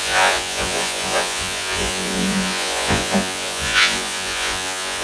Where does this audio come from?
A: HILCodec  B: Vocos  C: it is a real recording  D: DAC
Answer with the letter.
B